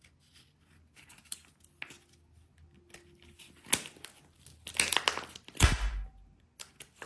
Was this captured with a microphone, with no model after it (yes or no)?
yes